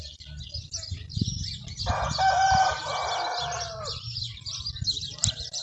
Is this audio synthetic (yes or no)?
no